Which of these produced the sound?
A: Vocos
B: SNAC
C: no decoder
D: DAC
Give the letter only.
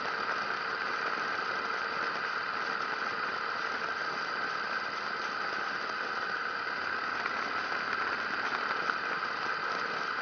C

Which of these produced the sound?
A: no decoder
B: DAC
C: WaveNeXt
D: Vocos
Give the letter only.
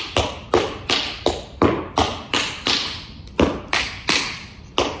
A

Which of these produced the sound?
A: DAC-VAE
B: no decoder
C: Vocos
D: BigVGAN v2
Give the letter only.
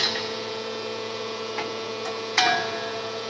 C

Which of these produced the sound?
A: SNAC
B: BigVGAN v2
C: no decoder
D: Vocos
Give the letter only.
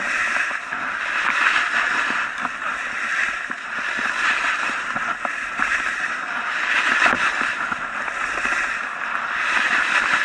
C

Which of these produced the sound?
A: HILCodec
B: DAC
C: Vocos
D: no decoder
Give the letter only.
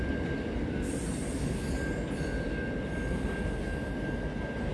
D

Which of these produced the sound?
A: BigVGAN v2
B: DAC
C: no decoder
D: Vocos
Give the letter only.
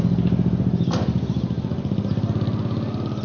C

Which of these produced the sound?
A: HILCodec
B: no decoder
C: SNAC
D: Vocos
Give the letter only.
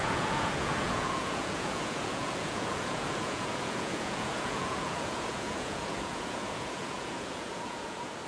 D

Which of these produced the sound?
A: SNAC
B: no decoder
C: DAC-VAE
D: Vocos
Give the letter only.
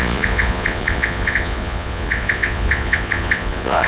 D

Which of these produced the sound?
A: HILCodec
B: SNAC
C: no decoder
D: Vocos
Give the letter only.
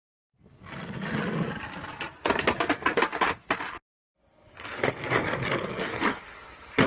C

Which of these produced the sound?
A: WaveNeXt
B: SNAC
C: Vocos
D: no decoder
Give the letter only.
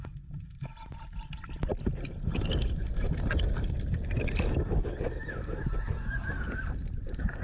D